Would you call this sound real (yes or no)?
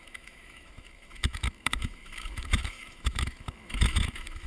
no